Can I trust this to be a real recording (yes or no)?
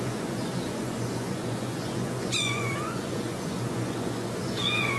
no